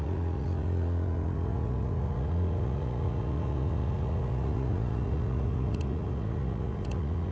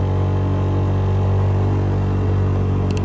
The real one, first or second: second